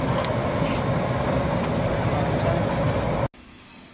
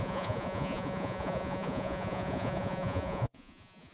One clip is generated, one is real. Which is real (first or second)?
first